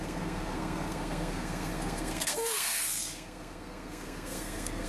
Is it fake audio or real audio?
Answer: fake